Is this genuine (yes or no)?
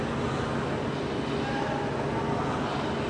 yes